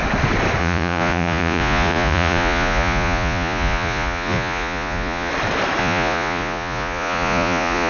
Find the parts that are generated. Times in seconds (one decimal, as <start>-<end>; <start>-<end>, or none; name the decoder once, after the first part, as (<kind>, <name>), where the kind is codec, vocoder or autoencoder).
0.6-5.3 (vocoder, Vocos); 5.8-7.9